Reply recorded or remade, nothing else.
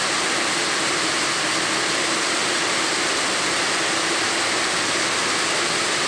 recorded